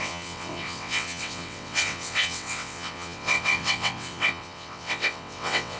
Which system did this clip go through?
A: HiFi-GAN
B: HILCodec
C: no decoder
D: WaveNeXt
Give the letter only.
D